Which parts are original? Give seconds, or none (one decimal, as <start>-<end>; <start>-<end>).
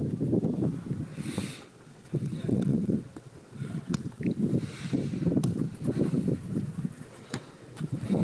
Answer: 0.0-1.1; 4.2-7.1